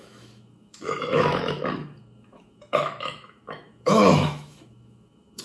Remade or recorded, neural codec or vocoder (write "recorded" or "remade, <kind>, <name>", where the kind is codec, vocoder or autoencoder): remade, autoencoder, DAC-VAE